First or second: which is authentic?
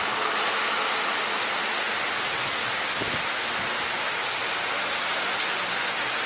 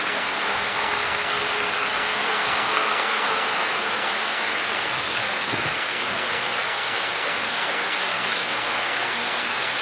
first